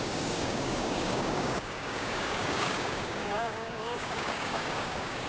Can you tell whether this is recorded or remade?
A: remade